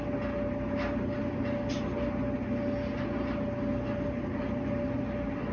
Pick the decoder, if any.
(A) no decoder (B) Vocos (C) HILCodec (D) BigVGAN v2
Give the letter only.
A